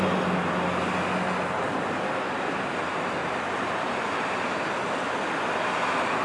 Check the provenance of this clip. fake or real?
real